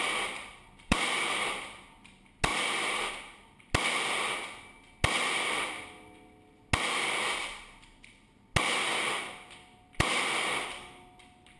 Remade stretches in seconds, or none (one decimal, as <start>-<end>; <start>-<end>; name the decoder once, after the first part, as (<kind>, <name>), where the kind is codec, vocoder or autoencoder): none